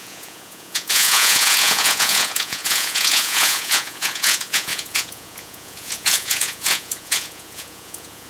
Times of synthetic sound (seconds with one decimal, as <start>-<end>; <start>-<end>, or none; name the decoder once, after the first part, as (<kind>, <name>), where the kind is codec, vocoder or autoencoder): 0.0-8.3 (vocoder, Vocos)